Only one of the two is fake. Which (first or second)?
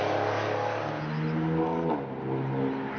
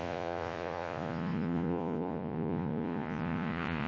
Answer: second